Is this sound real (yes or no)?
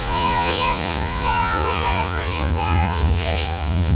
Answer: no